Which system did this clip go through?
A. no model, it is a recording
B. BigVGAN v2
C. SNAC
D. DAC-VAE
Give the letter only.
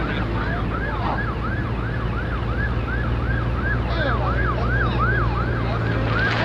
A